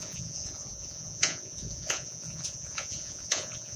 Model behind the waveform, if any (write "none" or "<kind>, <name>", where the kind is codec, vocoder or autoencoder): vocoder, Vocos